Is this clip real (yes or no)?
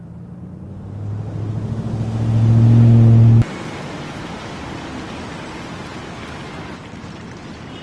yes